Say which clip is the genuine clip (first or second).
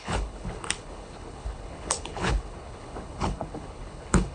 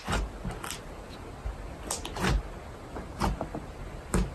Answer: second